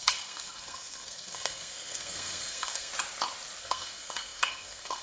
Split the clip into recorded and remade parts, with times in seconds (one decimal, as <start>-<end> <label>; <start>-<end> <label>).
0.0-2.9 remade; 2.9-3.6 recorded; 3.6-5.0 remade